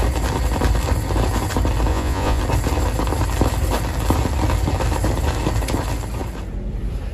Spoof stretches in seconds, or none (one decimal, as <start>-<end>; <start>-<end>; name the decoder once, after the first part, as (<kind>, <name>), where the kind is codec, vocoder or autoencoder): 1.9-2.4 (vocoder, Vocos)